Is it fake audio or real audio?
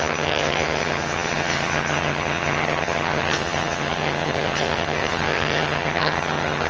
fake